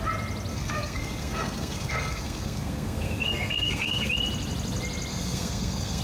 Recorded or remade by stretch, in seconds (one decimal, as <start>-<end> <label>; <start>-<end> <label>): 0.0-0.5 recorded; 0.5-4.1 remade; 4.1-5.1 recorded; 5.1-6.0 remade